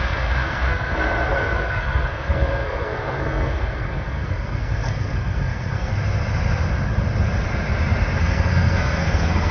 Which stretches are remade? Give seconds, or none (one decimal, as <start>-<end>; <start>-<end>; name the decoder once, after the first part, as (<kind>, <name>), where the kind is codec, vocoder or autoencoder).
0.0-5.9 (codec, SNAC); 8.2-9.5